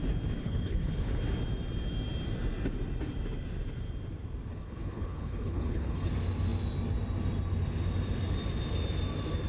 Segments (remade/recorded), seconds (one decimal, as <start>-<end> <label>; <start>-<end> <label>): 0.0-0.4 recorded; 0.4-1.2 remade; 1.2-4.5 recorded; 4.5-6.1 remade; 6.1-9.5 recorded